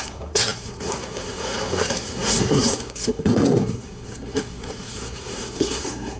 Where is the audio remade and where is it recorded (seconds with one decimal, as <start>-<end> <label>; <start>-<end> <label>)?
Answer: 0.0-6.2 remade